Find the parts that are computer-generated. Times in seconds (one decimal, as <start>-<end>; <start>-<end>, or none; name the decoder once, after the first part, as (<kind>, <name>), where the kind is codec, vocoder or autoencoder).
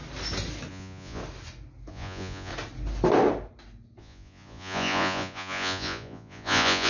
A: 0.7-1.2 (vocoder, Vocos); 1.9-2.5; 4.0-6.9